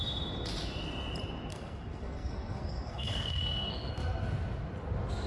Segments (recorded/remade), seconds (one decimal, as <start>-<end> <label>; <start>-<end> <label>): 0.0-1.5 recorded; 1.5-3.9 remade; 3.9-5.3 recorded